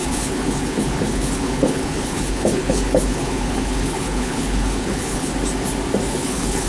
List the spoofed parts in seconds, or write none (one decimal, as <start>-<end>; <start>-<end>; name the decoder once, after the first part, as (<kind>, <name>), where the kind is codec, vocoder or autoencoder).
0.0-5.3 (codec, HILCodec); 6.1-6.7